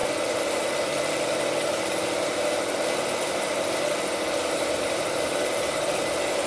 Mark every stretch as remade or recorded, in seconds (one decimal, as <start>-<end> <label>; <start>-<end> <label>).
0.0-4.4 recorded; 4.4-5.4 remade; 5.4-6.5 recorded

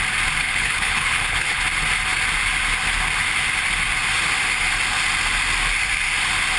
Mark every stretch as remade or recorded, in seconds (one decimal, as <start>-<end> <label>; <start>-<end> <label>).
0.0-0.4 recorded; 0.4-1.6 remade; 1.6-6.6 recorded

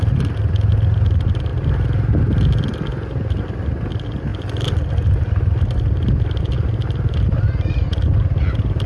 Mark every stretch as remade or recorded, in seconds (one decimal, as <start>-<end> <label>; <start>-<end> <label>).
0.0-8.9 recorded

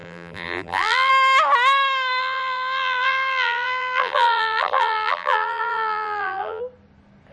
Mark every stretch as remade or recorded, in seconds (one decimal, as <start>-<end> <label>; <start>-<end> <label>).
0.0-1.1 remade; 1.1-2.2 recorded; 2.2-6.6 remade; 6.6-7.3 recorded

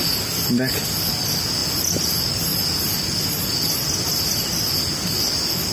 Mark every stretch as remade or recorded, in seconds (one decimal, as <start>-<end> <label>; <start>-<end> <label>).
0.0-5.7 recorded